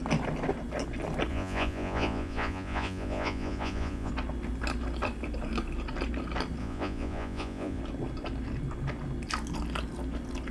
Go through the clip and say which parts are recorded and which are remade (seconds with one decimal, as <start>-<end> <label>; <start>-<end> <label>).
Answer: 0.0-1.3 recorded; 1.3-4.1 remade; 4.1-6.6 recorded; 6.6-7.8 remade; 7.8-10.5 recorded